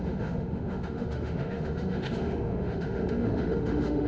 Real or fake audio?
fake